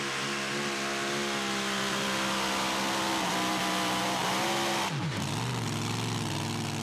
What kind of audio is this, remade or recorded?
recorded